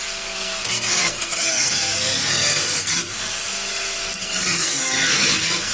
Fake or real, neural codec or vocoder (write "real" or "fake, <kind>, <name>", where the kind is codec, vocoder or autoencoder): fake, codec, SNAC